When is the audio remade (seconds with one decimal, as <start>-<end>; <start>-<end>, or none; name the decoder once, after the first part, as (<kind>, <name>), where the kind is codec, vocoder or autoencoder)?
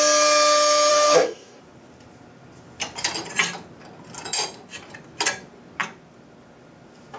0.9-1.6 (codec, DAC)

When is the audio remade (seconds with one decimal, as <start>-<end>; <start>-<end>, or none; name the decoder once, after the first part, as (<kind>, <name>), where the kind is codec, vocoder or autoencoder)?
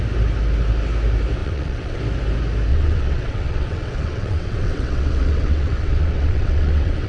1.4-2.0 (vocoder, WaveNeXt); 2.7-7.1